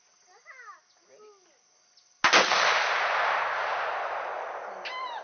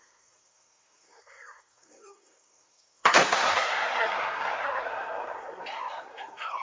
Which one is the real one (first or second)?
first